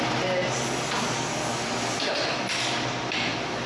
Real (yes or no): yes